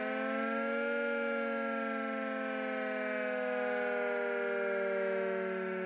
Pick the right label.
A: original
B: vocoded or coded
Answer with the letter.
A